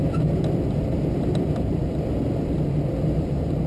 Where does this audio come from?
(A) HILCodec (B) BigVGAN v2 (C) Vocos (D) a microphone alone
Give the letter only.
B